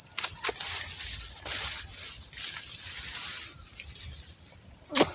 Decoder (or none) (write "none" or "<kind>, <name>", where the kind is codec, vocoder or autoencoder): none